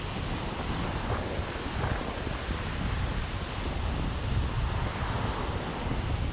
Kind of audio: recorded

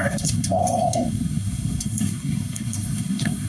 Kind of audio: remade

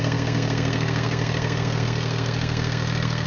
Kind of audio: remade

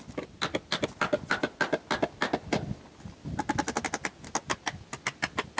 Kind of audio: recorded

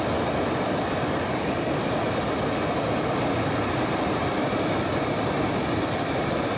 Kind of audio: recorded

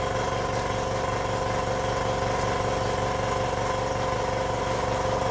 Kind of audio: recorded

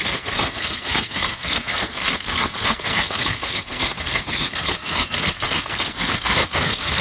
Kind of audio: remade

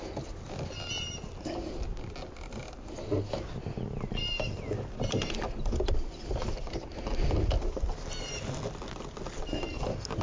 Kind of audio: recorded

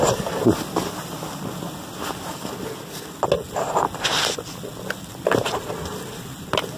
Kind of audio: recorded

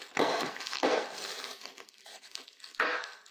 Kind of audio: remade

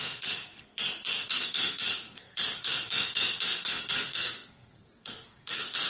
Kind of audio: remade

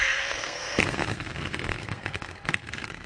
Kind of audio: remade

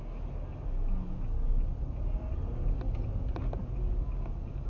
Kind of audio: recorded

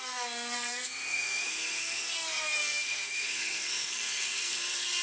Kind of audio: remade